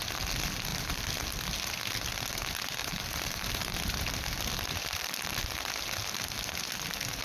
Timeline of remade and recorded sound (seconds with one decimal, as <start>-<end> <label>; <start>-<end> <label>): 0.0-0.7 recorded; 0.7-1.2 remade; 1.2-2.8 recorded; 2.8-3.8 remade; 3.8-7.2 recorded